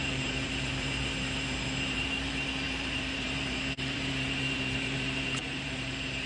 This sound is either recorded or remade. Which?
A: remade